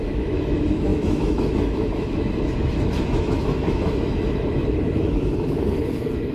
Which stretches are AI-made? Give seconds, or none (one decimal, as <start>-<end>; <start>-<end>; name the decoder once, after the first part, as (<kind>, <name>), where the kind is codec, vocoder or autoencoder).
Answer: 0.0-6.3 (autoencoder, DAC-VAE)